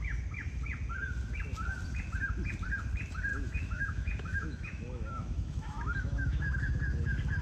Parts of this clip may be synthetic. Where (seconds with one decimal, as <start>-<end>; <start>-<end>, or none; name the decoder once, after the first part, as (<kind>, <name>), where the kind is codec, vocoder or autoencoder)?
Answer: 3.3-6.5 (autoencoder, DAC-VAE)